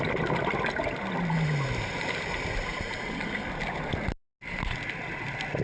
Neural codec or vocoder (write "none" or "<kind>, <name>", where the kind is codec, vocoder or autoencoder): none